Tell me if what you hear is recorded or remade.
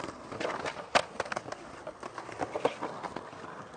recorded